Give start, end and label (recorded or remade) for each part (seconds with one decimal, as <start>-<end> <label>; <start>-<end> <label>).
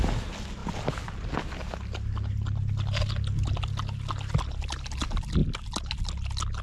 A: 0.0-6.6 recorded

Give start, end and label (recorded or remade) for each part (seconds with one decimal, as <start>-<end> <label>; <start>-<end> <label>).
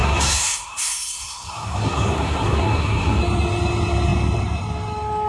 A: 0.0-3.2 remade; 3.2-5.3 recorded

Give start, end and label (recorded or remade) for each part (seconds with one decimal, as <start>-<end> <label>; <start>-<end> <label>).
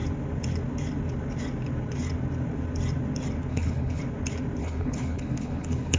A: 0.0-3.5 recorded; 3.5-4.0 remade; 4.0-4.6 recorded; 4.6-6.0 remade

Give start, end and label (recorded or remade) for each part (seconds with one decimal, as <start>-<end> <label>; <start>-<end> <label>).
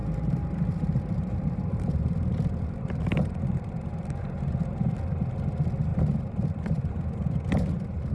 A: 0.0-4.2 remade; 4.2-5.9 recorded; 5.9-8.1 remade